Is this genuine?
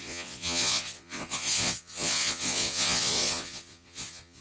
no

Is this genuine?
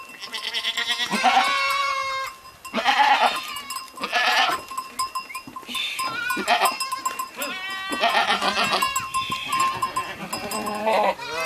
yes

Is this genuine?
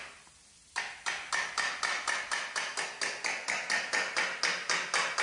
yes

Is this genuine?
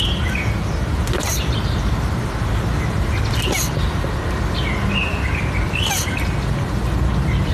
yes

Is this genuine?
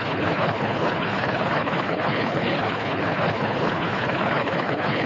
no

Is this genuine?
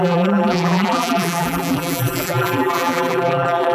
no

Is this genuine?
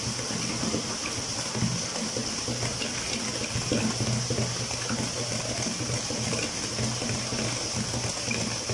yes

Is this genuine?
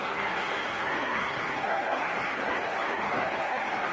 no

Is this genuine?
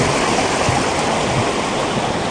yes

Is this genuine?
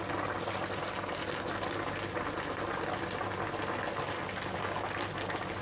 yes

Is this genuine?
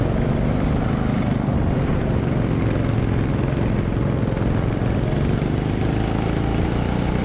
yes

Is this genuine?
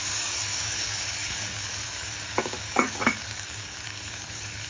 no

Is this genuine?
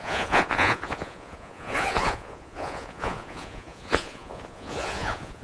no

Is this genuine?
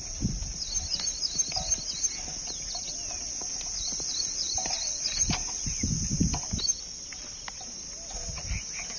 yes